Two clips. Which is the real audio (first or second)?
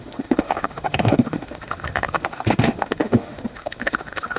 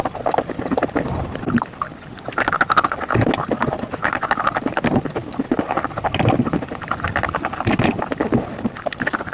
second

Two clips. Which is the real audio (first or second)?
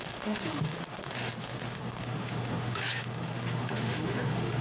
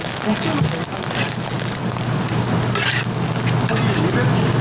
second